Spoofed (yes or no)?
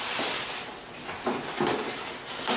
no